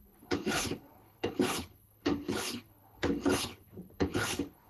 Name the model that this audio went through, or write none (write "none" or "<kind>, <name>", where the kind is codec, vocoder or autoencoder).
codec, HILCodec